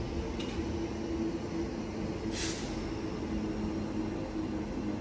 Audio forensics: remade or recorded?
recorded